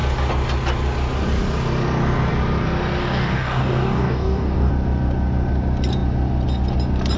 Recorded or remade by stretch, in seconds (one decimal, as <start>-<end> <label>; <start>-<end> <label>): 0.0-3.0 recorded; 3.0-4.7 remade; 4.7-7.2 recorded